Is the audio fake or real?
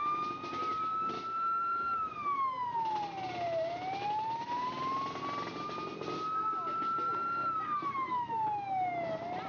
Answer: real